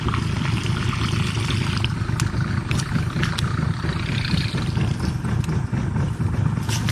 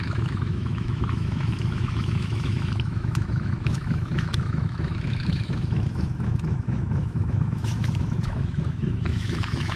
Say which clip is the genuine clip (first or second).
first